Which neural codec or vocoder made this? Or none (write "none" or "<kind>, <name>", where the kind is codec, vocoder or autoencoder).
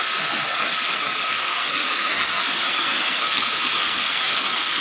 codec, SNAC